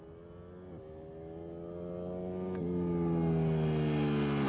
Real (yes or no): yes